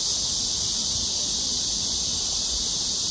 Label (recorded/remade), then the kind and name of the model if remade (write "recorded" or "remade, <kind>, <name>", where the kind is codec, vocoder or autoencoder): recorded